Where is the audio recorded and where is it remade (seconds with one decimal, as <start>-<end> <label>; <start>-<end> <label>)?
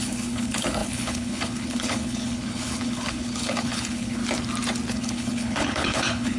0.0-4.2 remade; 4.2-4.9 recorded; 4.9-6.4 remade